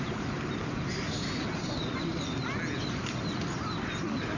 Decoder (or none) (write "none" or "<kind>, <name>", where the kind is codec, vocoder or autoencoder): none